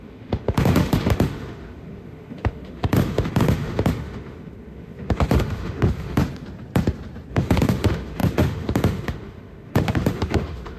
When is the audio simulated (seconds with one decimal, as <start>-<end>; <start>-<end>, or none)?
0.0-6.2; 7.3-10.8

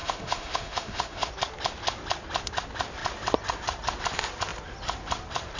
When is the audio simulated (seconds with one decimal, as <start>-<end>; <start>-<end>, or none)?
0.0-1.3

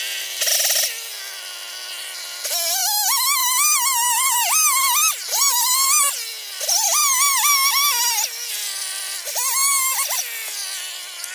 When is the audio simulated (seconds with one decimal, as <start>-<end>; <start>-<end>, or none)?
2.8-3.4

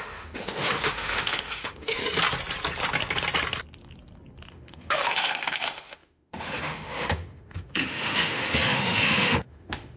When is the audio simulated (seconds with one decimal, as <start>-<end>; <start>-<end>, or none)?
0.0-2.0; 4.5-10.0

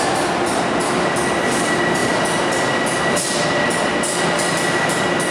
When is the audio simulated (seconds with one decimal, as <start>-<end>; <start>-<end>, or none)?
none

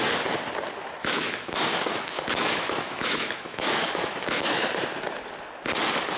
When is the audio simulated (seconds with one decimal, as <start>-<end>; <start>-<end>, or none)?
1.0-4.7

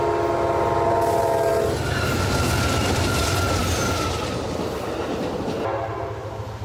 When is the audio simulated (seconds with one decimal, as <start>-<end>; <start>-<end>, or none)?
none

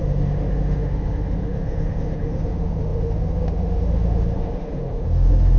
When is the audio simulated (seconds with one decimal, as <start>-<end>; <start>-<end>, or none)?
0.0-5.6